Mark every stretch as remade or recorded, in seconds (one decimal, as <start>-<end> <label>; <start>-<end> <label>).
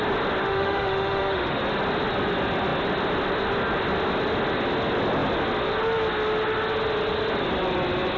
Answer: 0.0-0.4 recorded; 0.4-1.6 remade; 1.6-8.2 recorded